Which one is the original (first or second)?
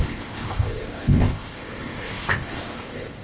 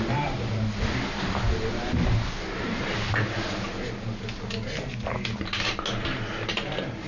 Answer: second